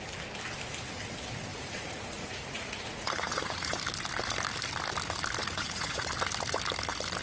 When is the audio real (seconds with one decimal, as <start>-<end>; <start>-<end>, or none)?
0.0-1.5; 3.8-5.4; 6.1-7.2